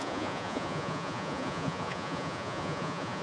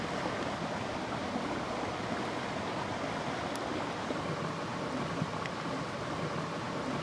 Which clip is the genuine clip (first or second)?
second